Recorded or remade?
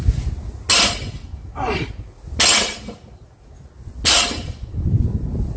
recorded